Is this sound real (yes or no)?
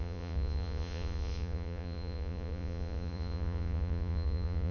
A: no